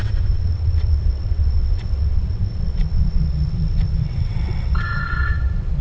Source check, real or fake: fake